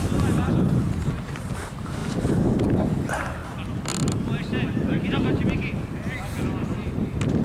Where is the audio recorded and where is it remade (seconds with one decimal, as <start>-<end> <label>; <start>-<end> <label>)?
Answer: 0.0-7.4 recorded